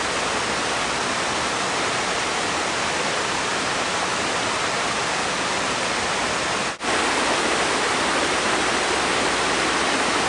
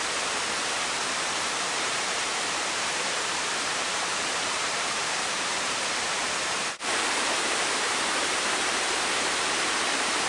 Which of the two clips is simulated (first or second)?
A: second